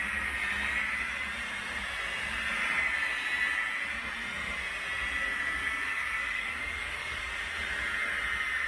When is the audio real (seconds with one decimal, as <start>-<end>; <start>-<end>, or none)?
0.0-5.6; 7.2-8.7